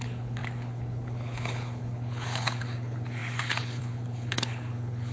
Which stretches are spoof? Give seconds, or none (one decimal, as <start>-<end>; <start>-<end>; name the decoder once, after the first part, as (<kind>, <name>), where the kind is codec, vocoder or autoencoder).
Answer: 0.0-5.1 (codec, HILCodec)